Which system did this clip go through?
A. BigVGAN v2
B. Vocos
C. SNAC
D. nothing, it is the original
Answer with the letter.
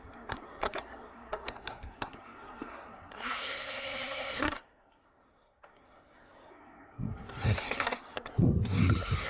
C